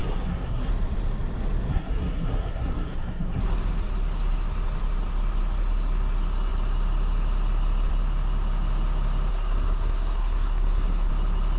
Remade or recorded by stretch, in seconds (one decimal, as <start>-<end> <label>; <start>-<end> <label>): 0.0-0.7 remade; 0.7-1.7 recorded; 1.7-3.4 remade; 3.4-9.3 recorded; 9.3-11.1 remade; 11.1-11.6 recorded